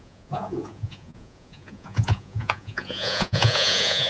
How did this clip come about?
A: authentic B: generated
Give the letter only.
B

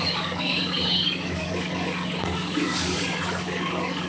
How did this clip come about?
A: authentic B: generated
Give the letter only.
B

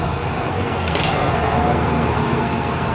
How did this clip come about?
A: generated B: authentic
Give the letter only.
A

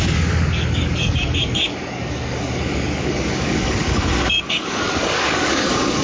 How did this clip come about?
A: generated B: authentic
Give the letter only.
A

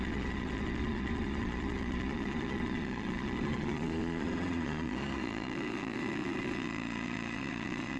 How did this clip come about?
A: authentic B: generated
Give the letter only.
B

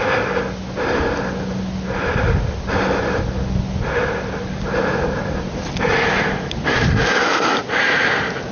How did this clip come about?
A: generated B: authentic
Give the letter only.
B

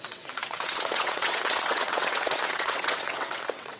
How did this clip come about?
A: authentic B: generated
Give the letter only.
B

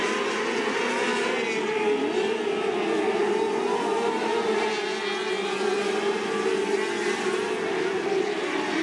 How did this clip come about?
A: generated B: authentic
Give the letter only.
B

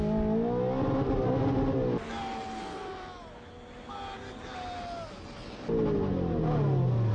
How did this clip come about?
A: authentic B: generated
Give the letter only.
A